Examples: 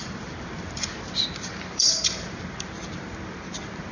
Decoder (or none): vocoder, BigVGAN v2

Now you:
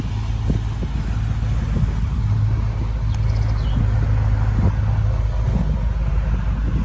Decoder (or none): none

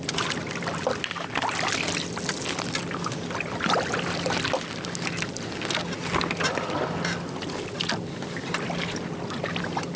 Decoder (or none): none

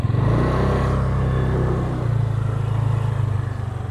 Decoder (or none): none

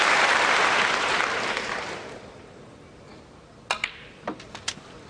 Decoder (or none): vocoder, BigVGAN v2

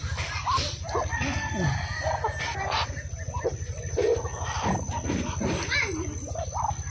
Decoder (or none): none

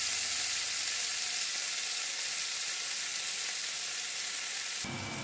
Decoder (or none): none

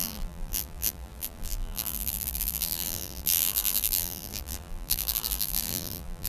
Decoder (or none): vocoder, BigVGAN v2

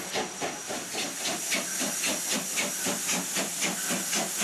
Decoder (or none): none